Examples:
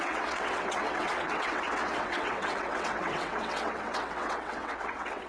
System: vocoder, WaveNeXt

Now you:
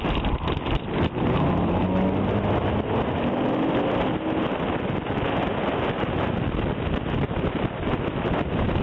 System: none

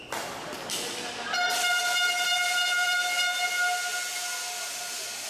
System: none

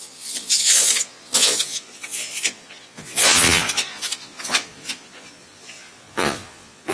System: vocoder, Vocos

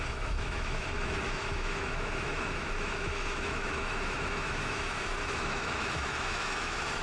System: autoencoder, DAC-VAE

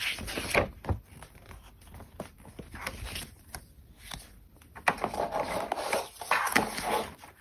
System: none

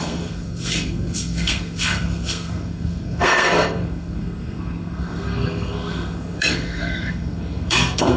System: codec, SNAC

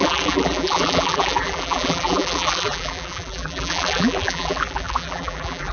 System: vocoder, BigVGAN v2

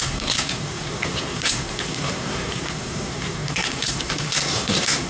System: codec, SNAC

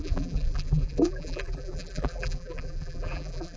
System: vocoder, BigVGAN v2